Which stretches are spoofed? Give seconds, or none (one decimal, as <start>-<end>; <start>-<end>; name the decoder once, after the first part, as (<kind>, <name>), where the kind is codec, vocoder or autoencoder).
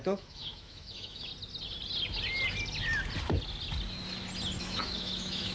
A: 0.0-1.3 (autoencoder, DAC-VAE); 4.6-5.5